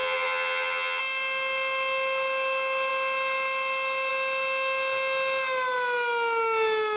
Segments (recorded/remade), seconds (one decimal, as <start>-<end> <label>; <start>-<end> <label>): 0.0-1.0 remade; 1.0-7.0 recorded